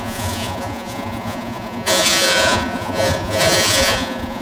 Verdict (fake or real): fake